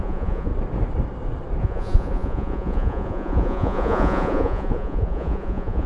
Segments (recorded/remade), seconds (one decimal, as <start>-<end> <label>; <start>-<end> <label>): 0.0-0.5 remade; 0.5-1.6 recorded; 1.6-5.9 remade